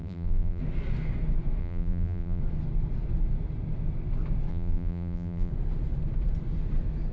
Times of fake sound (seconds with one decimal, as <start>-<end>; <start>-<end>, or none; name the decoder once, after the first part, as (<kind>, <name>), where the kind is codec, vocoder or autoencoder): 0.0-0.6 (vocoder, BigVGAN v2); 1.6-2.4; 4.5-5.5